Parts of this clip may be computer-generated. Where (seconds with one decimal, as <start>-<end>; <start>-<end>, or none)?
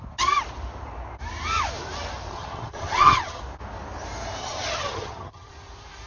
2.3-3.4; 4.4-5.5